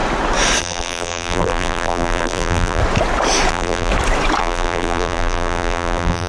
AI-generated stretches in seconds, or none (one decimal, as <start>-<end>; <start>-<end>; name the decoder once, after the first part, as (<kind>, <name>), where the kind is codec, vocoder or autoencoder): 0.6-2.8 (vocoder, BigVGAN v2); 3.5-3.9; 4.4-6.3

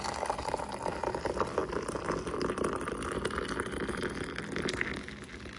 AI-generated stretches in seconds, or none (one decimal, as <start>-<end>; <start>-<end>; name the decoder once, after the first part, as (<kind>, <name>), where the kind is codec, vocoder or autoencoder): 0.4-0.9 (vocoder, BigVGAN v2); 1.6-4.2

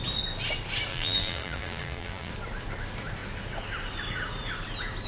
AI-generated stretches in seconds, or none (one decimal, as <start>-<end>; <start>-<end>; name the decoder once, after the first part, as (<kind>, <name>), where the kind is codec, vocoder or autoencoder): 0.9-2.3 (vocoder, BigVGAN v2)

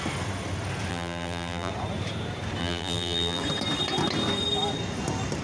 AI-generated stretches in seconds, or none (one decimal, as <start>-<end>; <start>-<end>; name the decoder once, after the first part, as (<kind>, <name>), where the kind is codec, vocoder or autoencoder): 0.9-1.7 (vocoder, BigVGAN v2); 2.6-3.4

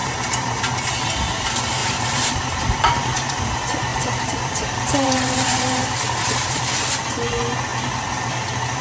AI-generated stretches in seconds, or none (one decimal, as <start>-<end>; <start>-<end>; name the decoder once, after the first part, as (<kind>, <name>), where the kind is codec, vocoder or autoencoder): 0.0-0.6 (vocoder, BigVGAN v2); 1.8-3.3; 3.9-6.6

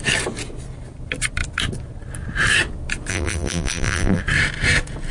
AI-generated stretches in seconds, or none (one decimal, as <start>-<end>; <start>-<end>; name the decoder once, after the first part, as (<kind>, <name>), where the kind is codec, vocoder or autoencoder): 3.1-4.2 (vocoder, BigVGAN v2)

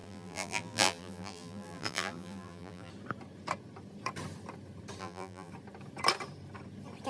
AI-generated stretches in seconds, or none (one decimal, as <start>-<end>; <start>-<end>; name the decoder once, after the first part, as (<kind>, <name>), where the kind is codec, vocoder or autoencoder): 0.0-2.9 (vocoder, BigVGAN v2); 5.0-5.5

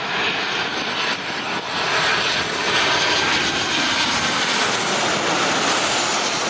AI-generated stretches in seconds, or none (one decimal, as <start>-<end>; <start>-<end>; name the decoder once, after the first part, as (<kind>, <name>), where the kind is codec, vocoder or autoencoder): none